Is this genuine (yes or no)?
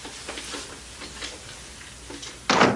yes